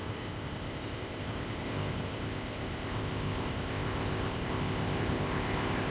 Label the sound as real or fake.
fake